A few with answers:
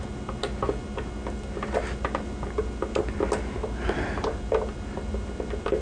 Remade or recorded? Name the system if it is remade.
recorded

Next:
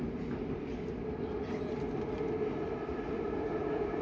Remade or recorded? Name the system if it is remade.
recorded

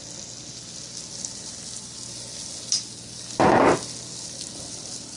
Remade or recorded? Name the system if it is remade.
recorded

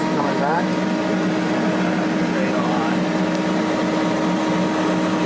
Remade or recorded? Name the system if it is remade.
recorded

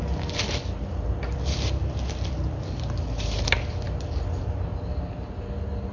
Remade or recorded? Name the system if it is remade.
recorded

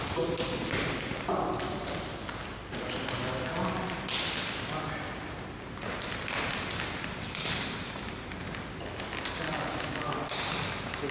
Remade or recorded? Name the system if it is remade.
recorded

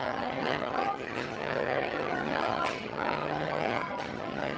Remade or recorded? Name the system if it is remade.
remade, vocoder, HiFi-GAN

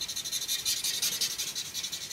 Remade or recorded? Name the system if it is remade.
recorded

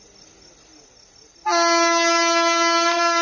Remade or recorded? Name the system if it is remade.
recorded